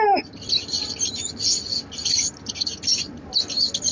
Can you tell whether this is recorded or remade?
recorded